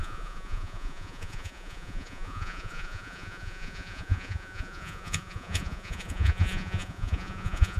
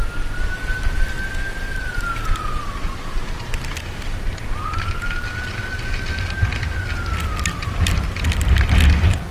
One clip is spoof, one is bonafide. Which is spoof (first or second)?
first